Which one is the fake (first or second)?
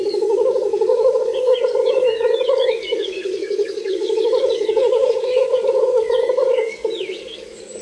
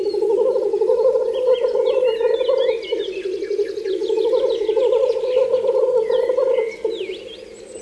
first